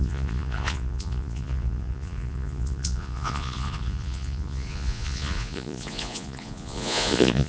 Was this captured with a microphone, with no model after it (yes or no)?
no